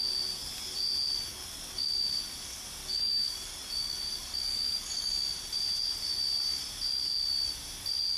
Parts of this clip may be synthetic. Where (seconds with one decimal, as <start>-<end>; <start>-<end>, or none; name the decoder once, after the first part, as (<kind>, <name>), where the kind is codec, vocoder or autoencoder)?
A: 1.3-1.9 (codec, DAC); 2.8-5.1